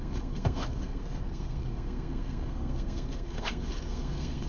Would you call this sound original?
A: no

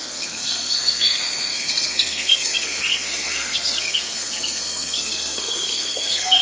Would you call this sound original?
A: no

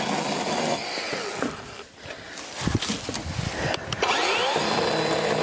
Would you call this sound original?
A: yes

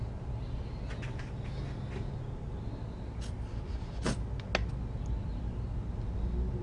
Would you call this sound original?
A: yes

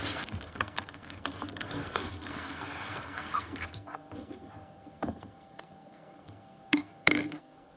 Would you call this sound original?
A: no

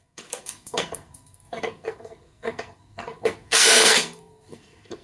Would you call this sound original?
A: no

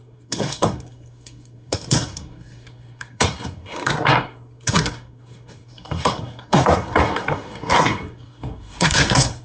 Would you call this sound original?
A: no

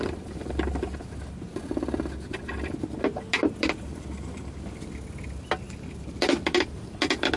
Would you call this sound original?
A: yes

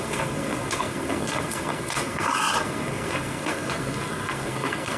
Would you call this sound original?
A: no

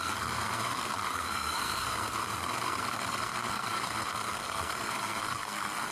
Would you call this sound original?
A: no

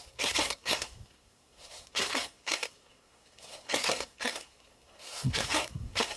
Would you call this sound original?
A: no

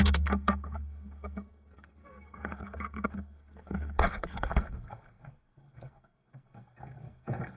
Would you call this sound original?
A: no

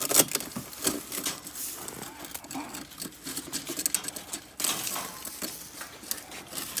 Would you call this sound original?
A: yes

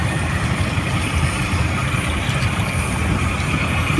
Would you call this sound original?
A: yes